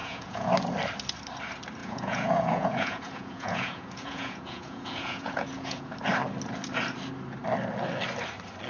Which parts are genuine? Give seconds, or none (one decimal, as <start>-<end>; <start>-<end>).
0.5-1.8; 5.9-8.7

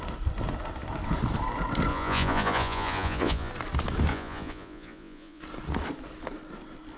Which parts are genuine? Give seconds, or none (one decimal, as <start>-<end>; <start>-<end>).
0.0-1.9; 3.5-4.1; 5.4-7.0

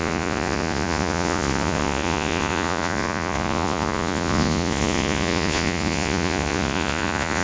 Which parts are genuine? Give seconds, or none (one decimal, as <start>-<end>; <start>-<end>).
none

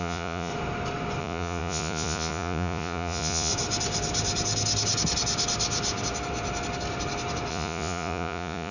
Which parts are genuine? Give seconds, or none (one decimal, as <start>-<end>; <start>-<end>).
0.5-1.2; 3.5-7.5

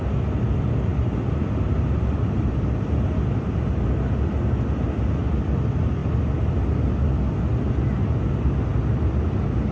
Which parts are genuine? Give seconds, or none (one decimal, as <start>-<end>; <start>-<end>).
0.0-9.7

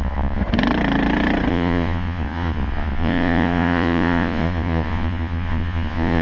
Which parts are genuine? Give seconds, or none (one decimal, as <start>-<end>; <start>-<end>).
0.4-1.5